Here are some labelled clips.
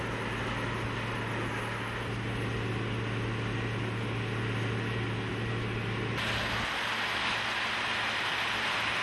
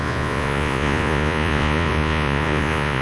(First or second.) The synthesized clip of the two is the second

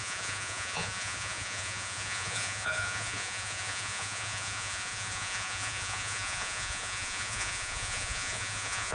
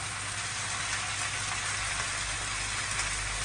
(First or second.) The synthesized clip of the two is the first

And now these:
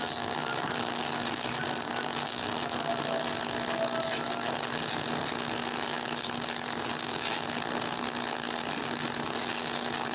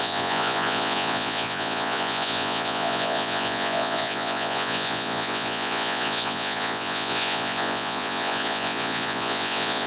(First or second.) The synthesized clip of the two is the second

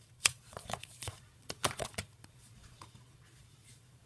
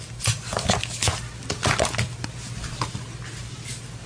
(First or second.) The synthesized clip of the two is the first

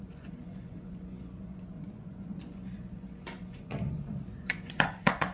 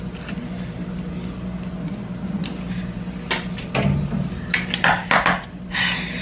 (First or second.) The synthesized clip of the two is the first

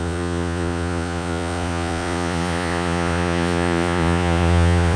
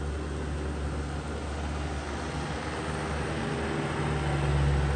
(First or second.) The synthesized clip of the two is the first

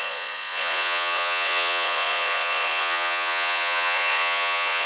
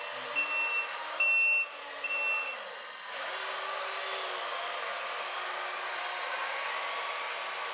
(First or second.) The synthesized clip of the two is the first